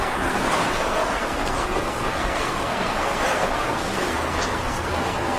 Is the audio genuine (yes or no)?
no